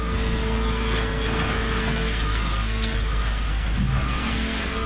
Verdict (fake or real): fake